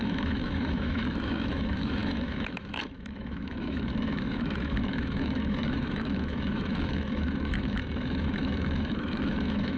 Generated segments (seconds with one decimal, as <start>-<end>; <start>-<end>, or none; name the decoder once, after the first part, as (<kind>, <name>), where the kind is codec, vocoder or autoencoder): 0.0-9.8 (autoencoder, DAC-VAE)

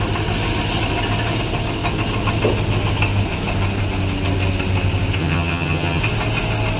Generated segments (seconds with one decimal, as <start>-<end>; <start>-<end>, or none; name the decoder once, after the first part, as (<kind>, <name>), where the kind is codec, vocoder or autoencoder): 5.2-6.0 (vocoder, HiFi-GAN)

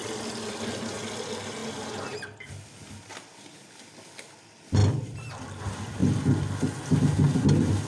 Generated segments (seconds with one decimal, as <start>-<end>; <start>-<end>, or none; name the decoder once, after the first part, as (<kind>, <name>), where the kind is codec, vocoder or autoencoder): 0.0-0.7 (vocoder, BigVGAN v2)

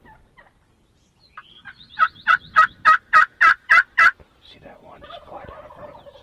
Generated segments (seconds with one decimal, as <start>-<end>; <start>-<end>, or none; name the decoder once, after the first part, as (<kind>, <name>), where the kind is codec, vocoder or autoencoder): none